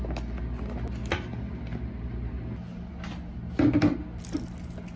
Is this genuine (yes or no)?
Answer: yes